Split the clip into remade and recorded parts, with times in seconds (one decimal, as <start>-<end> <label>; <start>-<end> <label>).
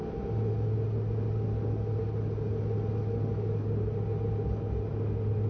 0.0-5.5 recorded